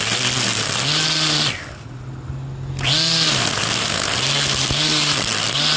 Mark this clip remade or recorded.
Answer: recorded